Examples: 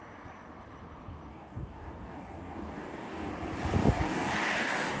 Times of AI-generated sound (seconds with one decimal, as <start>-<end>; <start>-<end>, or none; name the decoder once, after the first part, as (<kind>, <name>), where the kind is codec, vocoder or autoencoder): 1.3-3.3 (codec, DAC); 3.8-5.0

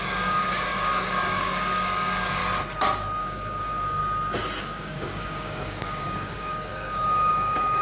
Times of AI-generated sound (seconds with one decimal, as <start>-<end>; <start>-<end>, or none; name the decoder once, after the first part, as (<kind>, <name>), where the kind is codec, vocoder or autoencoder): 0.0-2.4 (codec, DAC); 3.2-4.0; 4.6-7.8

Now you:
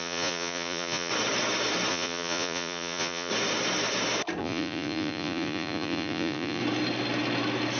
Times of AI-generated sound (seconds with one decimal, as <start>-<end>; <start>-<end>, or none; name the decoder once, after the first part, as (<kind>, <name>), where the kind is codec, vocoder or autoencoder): 0.0-1.1 (vocoder, Vocos); 1.9-3.3; 4.4-6.6

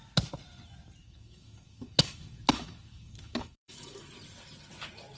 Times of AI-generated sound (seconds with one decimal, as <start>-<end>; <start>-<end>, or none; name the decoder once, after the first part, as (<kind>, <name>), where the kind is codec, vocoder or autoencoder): 1.0-4.1 (autoencoder, DAC-VAE)